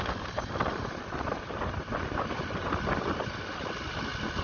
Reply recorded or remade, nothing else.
recorded